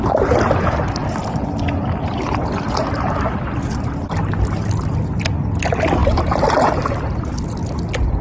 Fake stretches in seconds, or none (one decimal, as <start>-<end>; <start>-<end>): none